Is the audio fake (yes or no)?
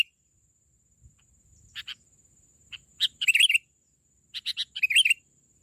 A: no